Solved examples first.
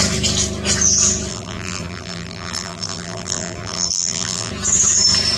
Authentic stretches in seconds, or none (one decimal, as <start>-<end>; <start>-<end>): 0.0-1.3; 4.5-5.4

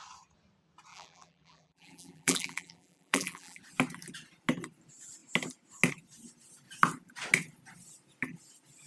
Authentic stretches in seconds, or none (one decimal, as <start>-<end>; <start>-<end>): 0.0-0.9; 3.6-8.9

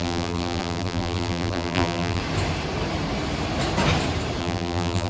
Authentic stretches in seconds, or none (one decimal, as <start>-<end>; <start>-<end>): 2.2-4.4